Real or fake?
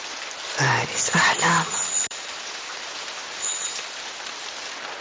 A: fake